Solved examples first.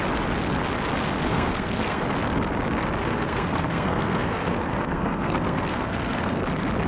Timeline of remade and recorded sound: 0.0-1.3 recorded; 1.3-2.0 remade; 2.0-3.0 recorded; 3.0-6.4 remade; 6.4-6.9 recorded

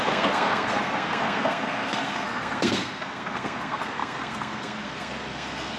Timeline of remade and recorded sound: 0.0-5.8 remade

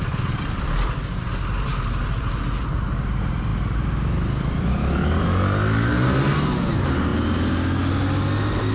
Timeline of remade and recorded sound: 0.0-8.7 recorded

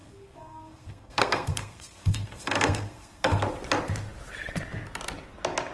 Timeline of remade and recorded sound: 0.0-3.4 remade; 3.4-5.7 recorded

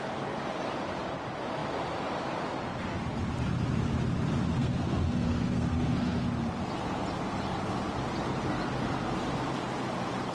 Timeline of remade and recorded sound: 0.0-4.6 recorded; 4.6-6.2 remade; 6.2-10.3 recorded

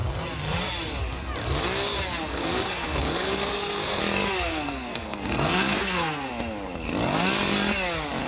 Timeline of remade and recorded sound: 0.0-2.3 recorded; 2.3-4.0 remade; 4.0-4.5 recorded; 4.5-6.3 remade; 6.3-8.3 recorded

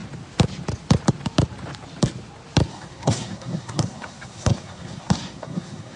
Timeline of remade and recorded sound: 0.0-2.7 recorded; 2.7-6.0 remade

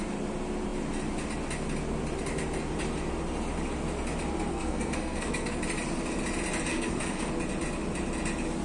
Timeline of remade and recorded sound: 0.0-4.5 recorded; 4.5-5.6 remade; 5.6-6.7 recorded; 6.7-7.3 remade; 7.3-8.6 recorded